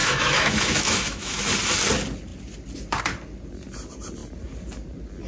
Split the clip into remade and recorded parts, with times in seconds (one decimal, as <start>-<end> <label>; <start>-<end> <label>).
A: 0.0-1.4 remade; 1.4-5.3 recorded